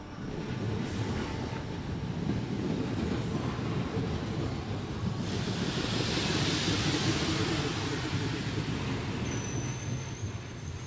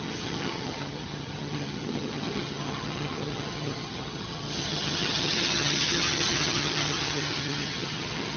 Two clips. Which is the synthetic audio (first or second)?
second